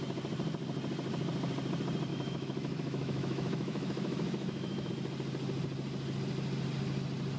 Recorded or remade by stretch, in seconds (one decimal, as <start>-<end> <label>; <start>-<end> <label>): 0.0-2.1 recorded; 2.1-4.9 remade; 4.9-7.4 recorded